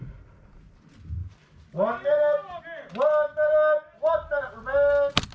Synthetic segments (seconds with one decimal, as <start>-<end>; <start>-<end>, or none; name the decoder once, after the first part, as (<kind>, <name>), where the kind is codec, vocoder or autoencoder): none